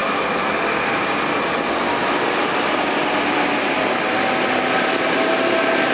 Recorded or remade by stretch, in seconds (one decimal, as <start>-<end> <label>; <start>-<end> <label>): 0.0-5.9 recorded